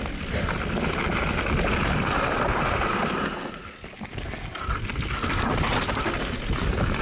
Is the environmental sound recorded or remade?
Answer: recorded